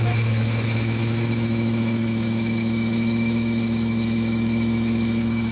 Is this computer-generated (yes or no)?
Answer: yes